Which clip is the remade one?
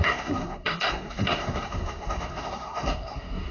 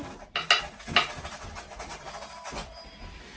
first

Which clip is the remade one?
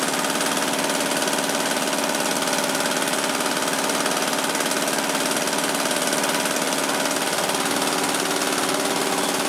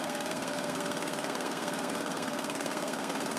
second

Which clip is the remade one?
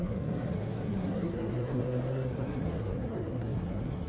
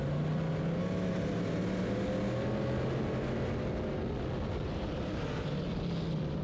first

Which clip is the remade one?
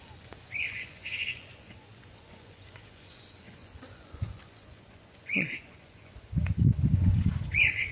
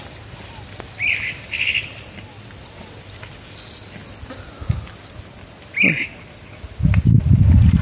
first